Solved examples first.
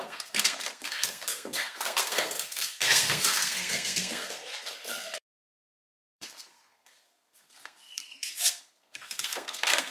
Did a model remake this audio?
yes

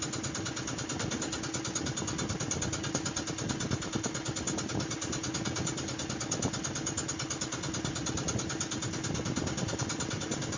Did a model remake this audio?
no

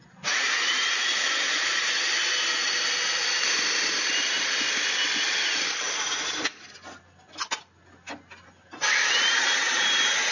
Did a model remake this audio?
no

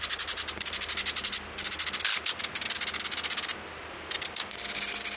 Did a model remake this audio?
no